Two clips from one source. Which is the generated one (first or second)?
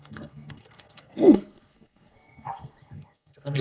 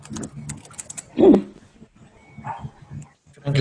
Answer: first